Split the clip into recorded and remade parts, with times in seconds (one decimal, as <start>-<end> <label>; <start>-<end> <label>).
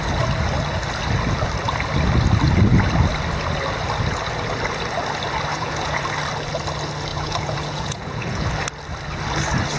0.0-5.5 recorded; 5.5-6.0 remade; 6.0-7.1 recorded; 7.1-8.5 remade; 8.5-9.8 recorded